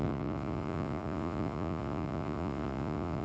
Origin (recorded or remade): remade